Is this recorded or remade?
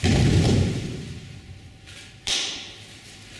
remade